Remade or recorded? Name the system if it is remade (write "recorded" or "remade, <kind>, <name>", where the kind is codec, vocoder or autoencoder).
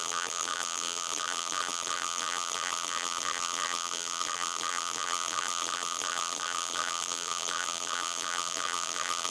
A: remade, vocoder, BigVGAN v2